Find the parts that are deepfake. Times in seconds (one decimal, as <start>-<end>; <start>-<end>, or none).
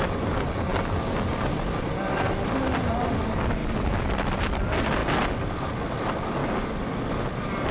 none